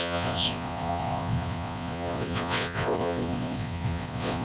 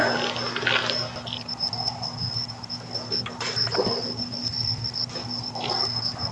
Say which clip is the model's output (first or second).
first